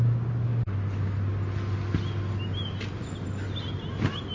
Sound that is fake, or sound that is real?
real